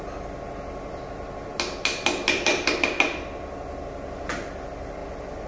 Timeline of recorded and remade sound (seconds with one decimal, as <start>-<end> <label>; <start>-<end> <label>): 0.0-5.0 recorded; 5.0-5.5 remade